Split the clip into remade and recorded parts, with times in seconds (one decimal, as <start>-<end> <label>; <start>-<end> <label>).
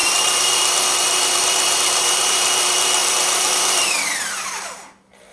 0.0-5.3 remade